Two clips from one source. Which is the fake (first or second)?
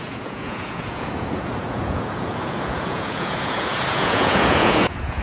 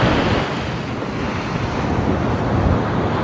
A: first